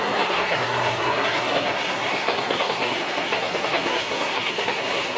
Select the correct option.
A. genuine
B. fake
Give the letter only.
B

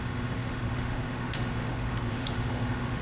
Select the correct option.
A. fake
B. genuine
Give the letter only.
A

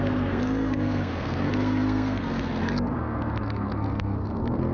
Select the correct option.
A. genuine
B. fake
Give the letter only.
B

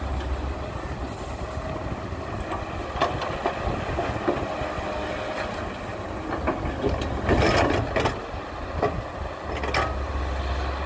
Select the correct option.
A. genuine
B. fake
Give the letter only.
A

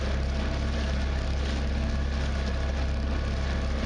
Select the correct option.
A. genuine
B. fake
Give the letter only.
A